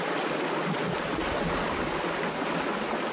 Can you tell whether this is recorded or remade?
recorded